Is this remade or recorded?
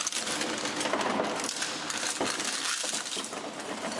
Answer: recorded